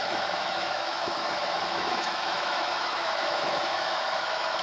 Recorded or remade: remade